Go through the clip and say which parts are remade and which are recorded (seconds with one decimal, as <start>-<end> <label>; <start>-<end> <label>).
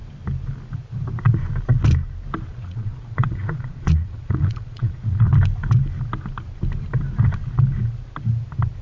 0.0-2.5 recorded; 2.5-5.3 remade; 5.3-8.8 recorded